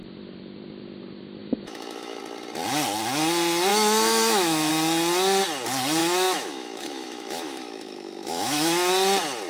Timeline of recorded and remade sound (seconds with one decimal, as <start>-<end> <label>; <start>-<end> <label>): 0.0-1.4 recorded; 1.4-2.2 remade; 2.2-3.7 recorded; 3.7-4.7 remade; 4.7-6.0 recorded; 6.0-8.9 remade; 8.9-9.5 recorded